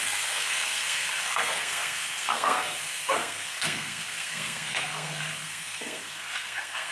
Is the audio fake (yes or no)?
yes